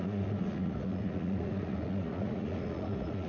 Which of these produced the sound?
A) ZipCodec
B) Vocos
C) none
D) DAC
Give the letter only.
B